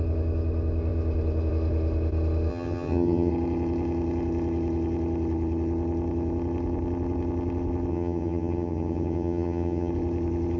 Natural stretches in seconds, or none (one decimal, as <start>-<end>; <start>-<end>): 0.0-2.5; 3.3-7.9; 9.9-10.6